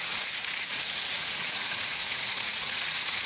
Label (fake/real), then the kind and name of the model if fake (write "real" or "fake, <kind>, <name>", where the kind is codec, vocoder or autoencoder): fake, vocoder, Vocos